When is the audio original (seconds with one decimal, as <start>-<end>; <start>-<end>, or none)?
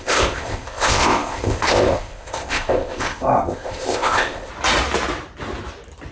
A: 4.5-6.1